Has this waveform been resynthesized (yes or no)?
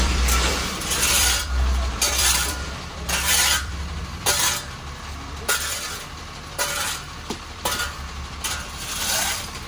yes